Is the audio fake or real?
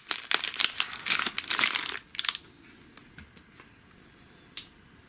real